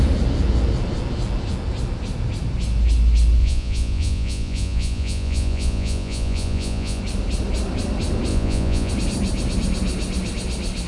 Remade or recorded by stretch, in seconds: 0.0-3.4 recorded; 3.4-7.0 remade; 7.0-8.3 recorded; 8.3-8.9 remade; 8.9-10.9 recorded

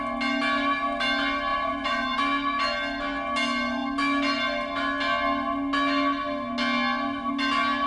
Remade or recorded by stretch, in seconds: 0.0-1.5 recorded; 1.5-2.2 remade; 2.2-7.9 recorded

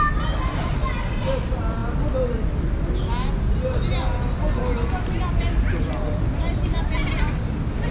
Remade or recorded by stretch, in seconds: 0.0-7.9 recorded

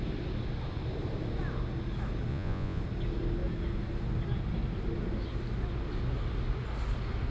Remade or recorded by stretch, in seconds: 0.0-2.3 recorded; 2.3-2.8 remade; 2.8-7.3 recorded

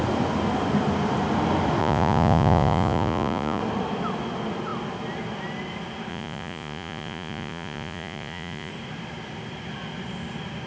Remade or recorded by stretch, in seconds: 0.0-1.8 recorded; 1.8-3.6 remade; 3.6-6.1 recorded; 6.1-8.7 remade; 8.7-10.7 recorded

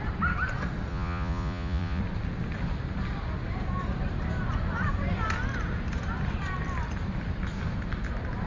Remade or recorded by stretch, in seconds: 0.0-0.9 recorded; 0.9-2.0 remade; 2.0-8.5 recorded

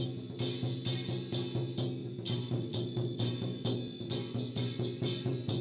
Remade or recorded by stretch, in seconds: 0.0-2.0 recorded; 2.0-5.6 remade